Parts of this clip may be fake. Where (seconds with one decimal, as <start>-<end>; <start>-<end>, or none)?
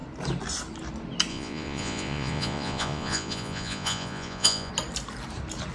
1.3-4.7